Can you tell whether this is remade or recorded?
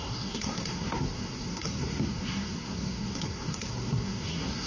remade